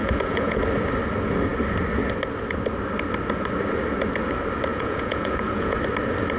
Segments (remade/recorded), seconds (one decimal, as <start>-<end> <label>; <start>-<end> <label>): 0.0-0.6 remade; 0.6-4.7 recorded; 4.7-5.8 remade; 5.8-6.4 recorded